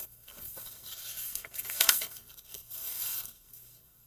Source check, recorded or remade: remade